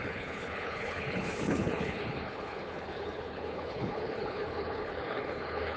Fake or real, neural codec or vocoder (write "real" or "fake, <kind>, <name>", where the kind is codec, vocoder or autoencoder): fake, codec, HILCodec